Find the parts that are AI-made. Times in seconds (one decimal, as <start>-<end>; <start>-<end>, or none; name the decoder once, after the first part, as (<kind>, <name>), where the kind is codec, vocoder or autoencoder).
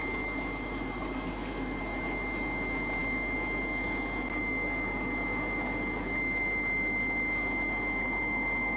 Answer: 0.0-8.8 (autoencoder, DAC-VAE)